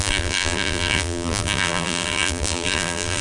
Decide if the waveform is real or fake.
fake